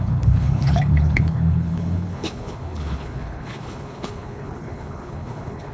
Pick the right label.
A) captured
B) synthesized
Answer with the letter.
B